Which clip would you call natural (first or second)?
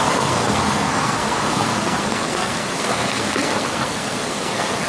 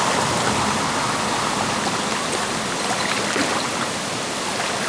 second